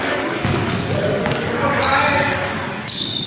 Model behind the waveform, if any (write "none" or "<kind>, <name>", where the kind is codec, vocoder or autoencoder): codec, DAC